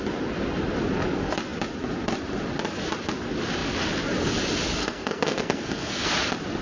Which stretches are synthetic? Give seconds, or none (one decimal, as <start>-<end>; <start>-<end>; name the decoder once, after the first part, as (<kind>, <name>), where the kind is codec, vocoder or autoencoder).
4.8-6.1 (codec, SNAC)